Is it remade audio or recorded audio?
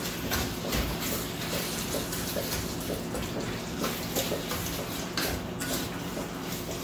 recorded